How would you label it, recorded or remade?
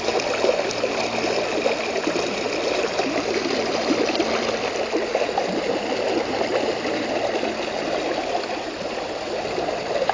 recorded